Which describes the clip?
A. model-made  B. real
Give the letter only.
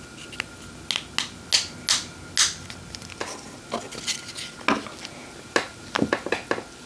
B